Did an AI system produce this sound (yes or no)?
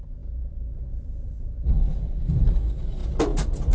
no